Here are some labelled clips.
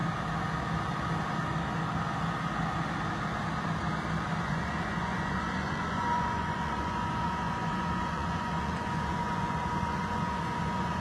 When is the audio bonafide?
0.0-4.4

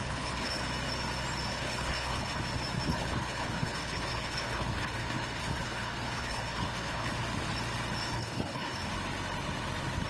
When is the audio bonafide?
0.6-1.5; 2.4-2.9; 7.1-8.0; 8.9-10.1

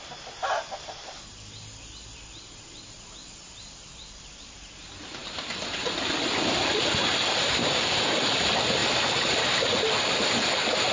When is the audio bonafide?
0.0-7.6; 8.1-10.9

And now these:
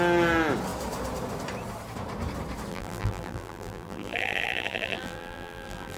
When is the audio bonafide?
0.0-2.7